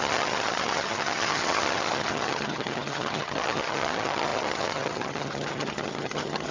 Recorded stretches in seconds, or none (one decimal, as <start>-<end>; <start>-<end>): none